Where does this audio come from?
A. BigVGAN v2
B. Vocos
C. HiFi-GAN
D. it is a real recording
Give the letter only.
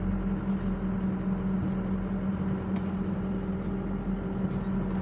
D